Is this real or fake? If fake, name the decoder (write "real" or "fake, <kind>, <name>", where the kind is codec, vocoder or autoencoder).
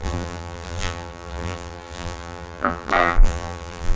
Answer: fake, vocoder, BigVGAN v2